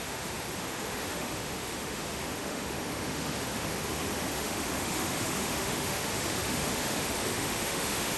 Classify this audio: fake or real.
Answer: fake